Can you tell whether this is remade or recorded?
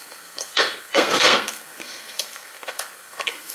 remade